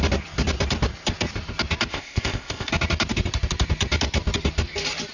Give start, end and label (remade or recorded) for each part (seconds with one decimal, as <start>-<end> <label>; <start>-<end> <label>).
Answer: 0.0-1.9 recorded; 1.9-2.7 remade; 2.7-5.1 recorded